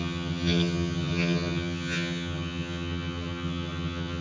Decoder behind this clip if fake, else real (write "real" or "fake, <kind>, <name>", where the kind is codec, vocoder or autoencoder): fake, vocoder, HiFi-GAN